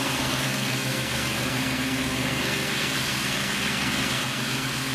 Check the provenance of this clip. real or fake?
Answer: fake